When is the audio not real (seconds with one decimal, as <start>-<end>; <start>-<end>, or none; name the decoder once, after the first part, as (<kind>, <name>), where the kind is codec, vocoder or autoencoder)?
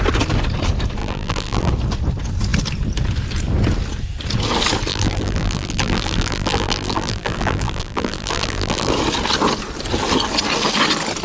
1.0-1.7 (vocoder, BigVGAN v2); 4.9-8.9